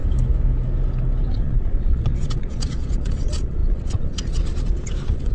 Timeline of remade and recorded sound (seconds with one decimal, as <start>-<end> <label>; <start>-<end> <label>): 0.0-1.3 recorded; 1.3-5.3 remade